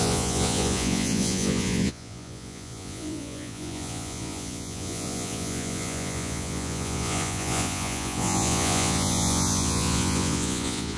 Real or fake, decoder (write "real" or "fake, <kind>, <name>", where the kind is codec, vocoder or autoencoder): fake, vocoder, Vocos